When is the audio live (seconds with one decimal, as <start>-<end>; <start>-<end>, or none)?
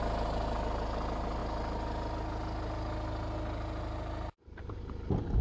0.0-5.4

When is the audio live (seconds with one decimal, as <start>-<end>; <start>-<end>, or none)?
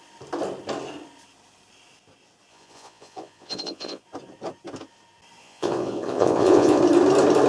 0.0-2.5; 4.0-5.4; 6.8-7.5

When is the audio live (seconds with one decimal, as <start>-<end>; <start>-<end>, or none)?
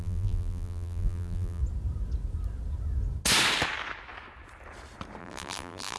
1.6-5.2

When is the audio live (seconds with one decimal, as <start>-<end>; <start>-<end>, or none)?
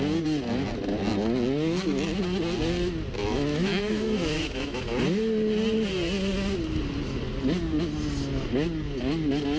0.0-3.2; 4.8-9.6